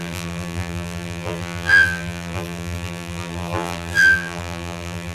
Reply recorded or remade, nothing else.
remade